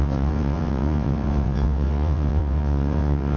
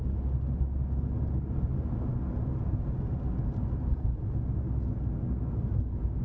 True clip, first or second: second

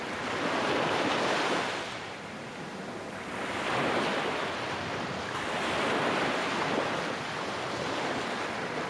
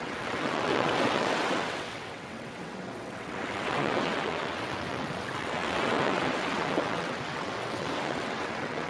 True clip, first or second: first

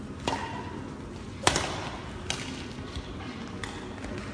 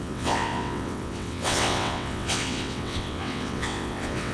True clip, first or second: first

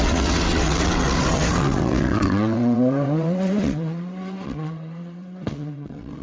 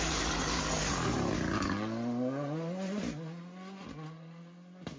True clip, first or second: second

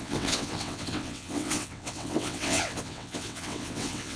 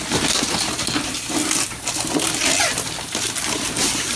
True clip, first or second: second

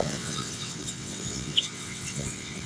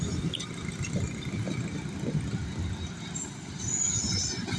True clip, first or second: second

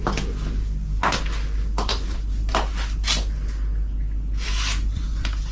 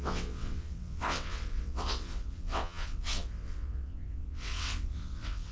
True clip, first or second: first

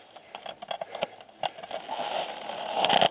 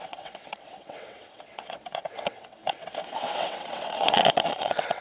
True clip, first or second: first